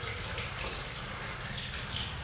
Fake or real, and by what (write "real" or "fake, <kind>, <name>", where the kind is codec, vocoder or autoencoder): real